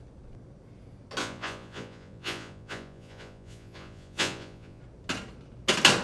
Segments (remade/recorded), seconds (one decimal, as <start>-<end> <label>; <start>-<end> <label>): 0.0-1.2 recorded; 1.2-4.8 remade; 4.8-6.0 recorded